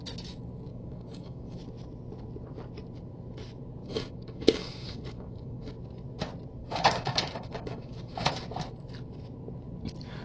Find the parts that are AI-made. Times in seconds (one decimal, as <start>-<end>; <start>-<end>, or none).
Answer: 0.7-1.6; 3.8-5.7; 6.6-8.3